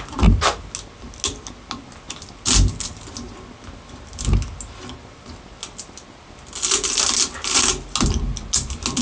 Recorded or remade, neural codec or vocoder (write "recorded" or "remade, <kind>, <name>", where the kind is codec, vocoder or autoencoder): recorded